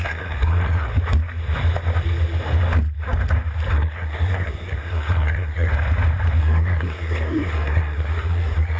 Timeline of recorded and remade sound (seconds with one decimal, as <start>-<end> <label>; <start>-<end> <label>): 0.0-0.9 remade; 0.9-3.7 recorded; 3.7-5.7 remade; 5.7-6.4 recorded; 6.4-8.8 remade